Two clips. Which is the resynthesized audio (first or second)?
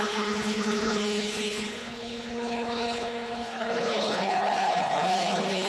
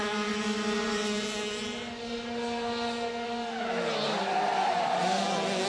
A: first